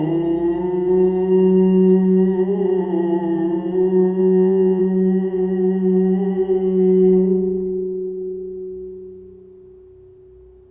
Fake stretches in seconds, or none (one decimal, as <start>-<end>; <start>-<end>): 4.2-4.8